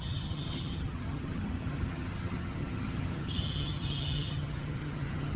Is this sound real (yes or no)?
no